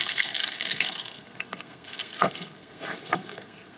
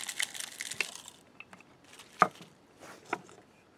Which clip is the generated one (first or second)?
first